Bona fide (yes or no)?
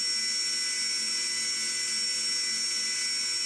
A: yes